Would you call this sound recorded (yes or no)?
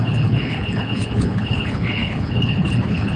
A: no